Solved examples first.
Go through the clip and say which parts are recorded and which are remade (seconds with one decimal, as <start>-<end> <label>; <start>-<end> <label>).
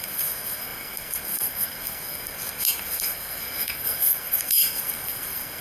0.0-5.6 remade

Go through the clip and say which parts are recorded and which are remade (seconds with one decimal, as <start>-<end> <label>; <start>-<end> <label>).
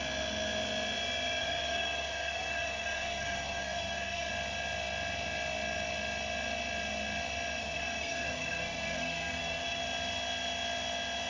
0.0-1.4 recorded; 1.4-4.3 remade; 4.3-7.6 recorded; 7.6-9.8 remade; 9.8-11.3 recorded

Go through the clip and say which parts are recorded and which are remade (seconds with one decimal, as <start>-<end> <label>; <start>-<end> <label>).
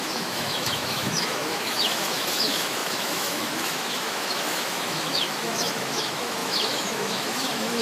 0.0-7.8 remade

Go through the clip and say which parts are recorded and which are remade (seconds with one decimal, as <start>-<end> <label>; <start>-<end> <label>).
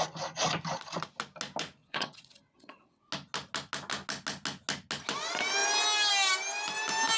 0.0-1.8 recorded; 1.8-3.1 remade; 3.1-7.2 recorded